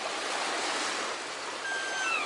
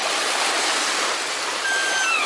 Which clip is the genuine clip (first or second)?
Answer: first